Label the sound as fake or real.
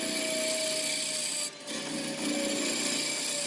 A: real